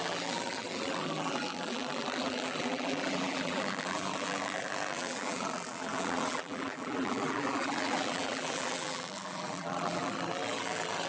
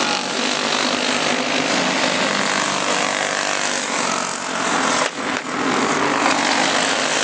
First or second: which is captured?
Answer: second